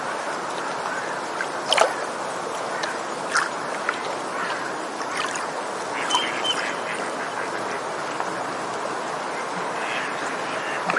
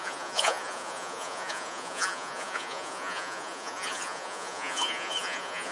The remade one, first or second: second